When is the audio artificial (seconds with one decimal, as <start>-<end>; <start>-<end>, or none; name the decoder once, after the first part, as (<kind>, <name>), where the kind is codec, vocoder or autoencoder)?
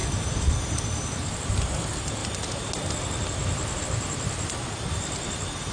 none